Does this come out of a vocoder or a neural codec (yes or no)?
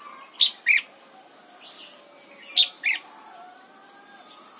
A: no